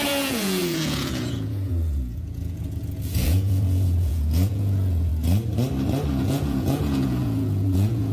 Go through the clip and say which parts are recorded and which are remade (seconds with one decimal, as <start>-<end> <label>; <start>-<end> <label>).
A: 0.0-5.1 remade; 5.1-6.1 recorded; 6.1-8.1 remade

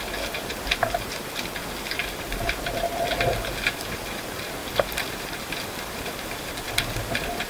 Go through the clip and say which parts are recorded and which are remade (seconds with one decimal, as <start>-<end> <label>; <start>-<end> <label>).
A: 0.0-2.0 recorded; 2.0-2.8 remade; 2.8-4.6 recorded; 4.6-6.7 remade; 6.7-7.5 recorded